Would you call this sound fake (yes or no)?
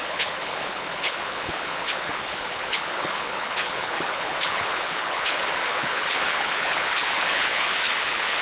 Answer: yes